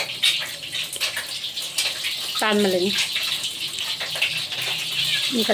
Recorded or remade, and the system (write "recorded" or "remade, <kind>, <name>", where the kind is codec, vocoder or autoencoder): recorded